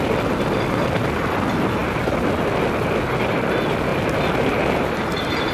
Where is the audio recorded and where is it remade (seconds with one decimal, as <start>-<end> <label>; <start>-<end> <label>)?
0.0-5.5 recorded